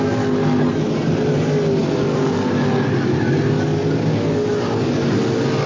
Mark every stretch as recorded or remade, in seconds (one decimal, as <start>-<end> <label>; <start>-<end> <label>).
0.0-5.7 recorded